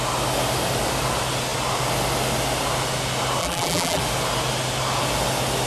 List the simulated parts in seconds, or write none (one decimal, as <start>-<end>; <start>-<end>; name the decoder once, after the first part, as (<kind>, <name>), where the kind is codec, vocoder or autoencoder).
3.4-4.0 (vocoder, BigVGAN v2)